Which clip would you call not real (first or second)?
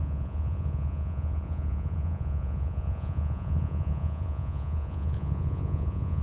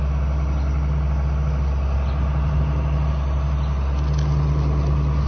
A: first